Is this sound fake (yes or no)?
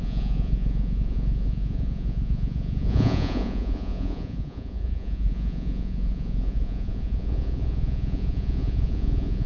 yes